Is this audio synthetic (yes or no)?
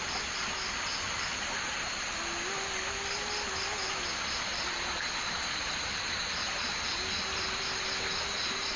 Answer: no